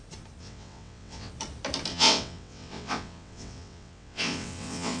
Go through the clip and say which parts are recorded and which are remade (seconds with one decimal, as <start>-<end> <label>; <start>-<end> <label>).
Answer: 0.0-0.4 recorded; 0.4-1.3 remade; 1.3-1.9 recorded; 1.9-5.0 remade